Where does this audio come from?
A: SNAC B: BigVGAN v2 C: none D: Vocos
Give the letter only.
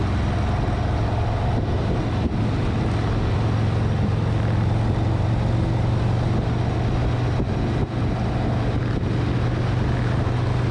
C